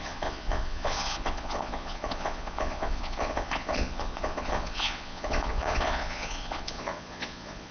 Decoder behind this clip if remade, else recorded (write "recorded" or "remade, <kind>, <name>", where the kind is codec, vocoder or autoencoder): remade, vocoder, Vocos